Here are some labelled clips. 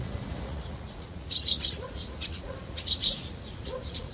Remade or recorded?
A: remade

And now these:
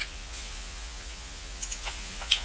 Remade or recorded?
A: remade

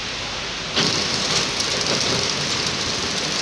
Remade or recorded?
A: recorded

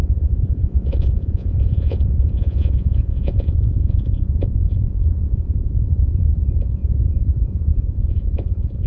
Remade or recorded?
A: remade